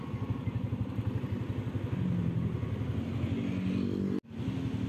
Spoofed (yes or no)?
no